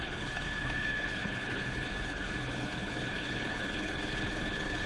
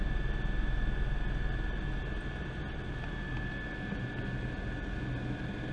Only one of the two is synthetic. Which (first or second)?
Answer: first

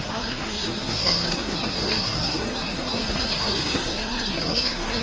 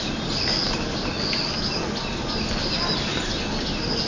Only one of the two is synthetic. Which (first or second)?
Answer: first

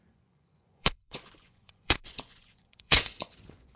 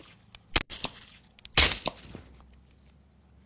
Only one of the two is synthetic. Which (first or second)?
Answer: first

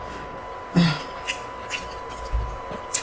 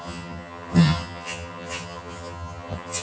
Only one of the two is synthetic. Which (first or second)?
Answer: second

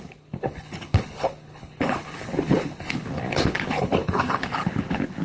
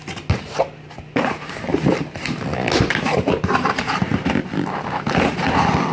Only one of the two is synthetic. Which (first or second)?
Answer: first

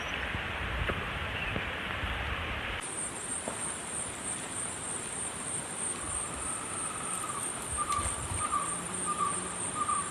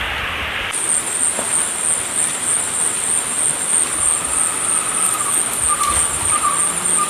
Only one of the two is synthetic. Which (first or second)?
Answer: first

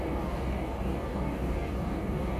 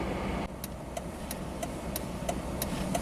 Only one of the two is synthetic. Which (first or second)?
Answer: first